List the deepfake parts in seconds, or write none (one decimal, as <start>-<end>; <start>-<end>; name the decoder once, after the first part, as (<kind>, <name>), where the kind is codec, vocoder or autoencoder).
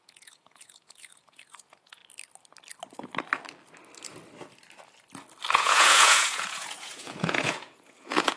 0.0-2.0 (vocoder, Vocos); 5.5-8.4